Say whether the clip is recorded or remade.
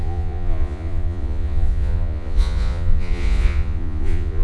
remade